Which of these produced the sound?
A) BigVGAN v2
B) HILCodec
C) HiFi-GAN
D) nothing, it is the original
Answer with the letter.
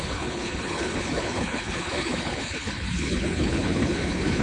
B